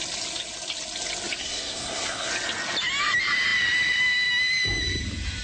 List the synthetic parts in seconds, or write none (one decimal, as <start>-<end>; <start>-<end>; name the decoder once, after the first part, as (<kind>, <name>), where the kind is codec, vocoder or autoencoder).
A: 1.4-2.3 (codec, SNAC)